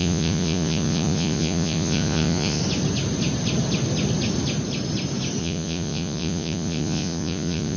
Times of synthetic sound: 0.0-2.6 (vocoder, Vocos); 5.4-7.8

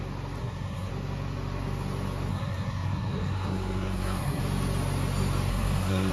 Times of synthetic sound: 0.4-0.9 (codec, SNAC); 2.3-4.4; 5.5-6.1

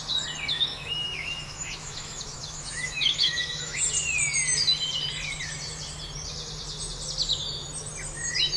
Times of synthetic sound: 0.5-3.8 (autoencoder, DAC-VAE)

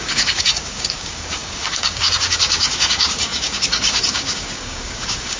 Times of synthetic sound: 0.0-5.4 (codec, DAC)

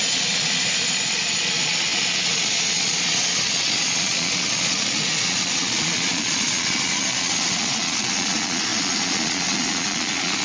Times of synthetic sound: 0.0-10.4 (vocoder, Vocos)

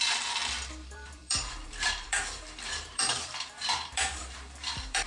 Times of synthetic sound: 0.0-5.1 (vocoder, BigVGAN v2)

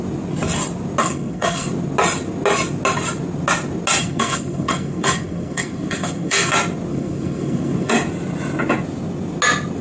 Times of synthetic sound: 1.0-1.7 (codec, SNAC); 4.0-6.5; 6.9-7.9